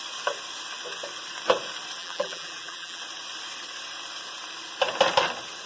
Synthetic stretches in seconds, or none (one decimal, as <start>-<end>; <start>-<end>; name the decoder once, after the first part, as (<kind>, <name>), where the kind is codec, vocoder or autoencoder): 2.0-3.0 (vocoder, BigVGAN v2)